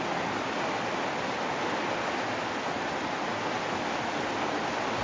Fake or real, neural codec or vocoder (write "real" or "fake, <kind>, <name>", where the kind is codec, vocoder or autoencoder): real